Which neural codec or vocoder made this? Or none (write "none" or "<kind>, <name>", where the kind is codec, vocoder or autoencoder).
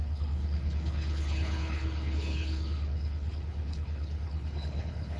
codec, HILCodec